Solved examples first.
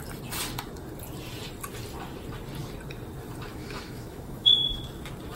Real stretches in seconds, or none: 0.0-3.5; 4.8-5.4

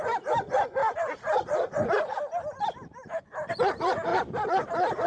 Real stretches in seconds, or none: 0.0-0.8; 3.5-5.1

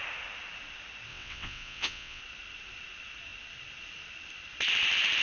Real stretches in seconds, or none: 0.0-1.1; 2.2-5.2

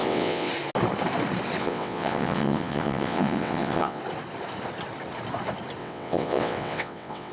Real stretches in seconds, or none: 0.5-1.6; 4.0-5.8